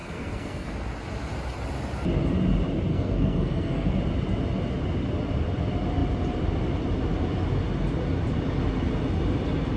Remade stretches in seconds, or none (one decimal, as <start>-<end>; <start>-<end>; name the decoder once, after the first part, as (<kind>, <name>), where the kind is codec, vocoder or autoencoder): 0.0-0.7 (codec, SNAC); 2.9-4.0